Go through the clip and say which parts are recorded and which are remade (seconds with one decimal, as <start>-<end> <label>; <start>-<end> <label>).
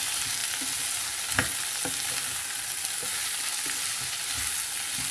0.0-5.1 recorded